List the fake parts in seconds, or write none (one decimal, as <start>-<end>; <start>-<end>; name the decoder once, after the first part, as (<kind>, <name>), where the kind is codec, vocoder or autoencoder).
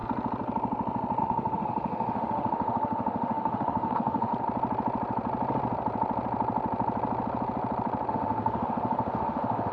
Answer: 1.2-4.3 (autoencoder, DAC-VAE); 8.1-9.7